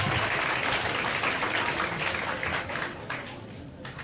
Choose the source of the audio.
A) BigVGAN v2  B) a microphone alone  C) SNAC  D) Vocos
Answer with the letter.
B